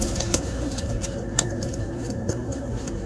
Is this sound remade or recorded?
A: remade